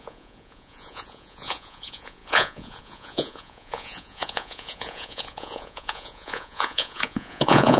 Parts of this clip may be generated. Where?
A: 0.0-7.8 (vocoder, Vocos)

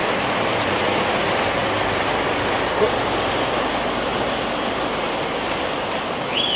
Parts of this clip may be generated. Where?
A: none